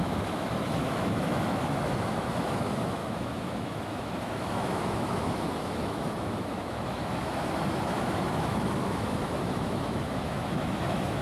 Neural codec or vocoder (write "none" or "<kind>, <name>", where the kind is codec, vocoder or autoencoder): autoencoder, DAC-VAE